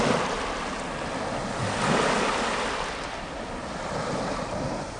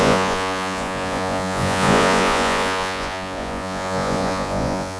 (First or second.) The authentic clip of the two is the first